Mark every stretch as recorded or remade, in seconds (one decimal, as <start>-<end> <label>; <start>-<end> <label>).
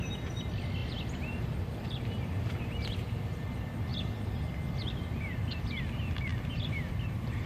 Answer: 0.0-7.5 recorded